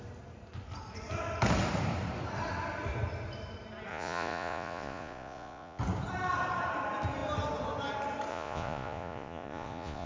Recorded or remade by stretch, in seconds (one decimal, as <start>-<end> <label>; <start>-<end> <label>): 0.0-3.9 recorded; 3.9-5.8 remade; 5.8-8.3 recorded; 8.3-10.1 remade